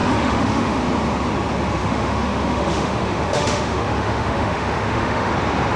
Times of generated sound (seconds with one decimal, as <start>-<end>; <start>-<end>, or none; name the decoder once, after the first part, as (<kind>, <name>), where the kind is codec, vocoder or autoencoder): 0.0-0.8 (autoencoder, DAC-VAE); 1.8-5.3